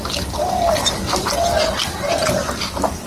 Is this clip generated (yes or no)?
no